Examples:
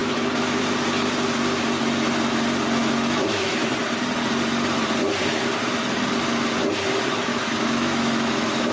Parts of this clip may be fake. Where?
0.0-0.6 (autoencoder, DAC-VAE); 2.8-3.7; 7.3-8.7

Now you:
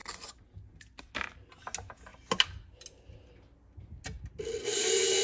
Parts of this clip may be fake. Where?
none

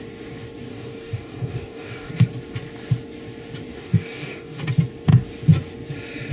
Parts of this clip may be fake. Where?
0.7-2.1 (codec, DAC); 3.7-4.6

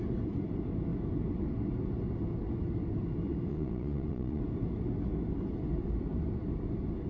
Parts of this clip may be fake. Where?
3.5-4.4 (vocoder, Vocos)

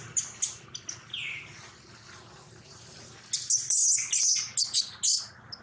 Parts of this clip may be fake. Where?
none

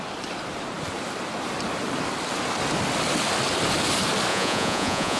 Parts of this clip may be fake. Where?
4.3-5.2 (vocoder, Vocos)